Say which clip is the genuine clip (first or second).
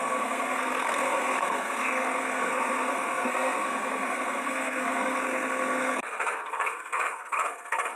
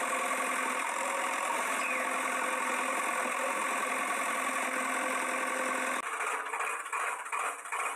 second